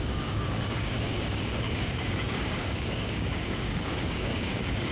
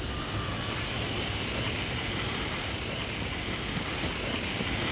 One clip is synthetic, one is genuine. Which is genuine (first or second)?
second